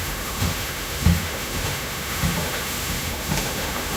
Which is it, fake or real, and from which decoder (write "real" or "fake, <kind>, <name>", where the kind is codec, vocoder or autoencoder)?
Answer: fake, autoencoder, DAC-VAE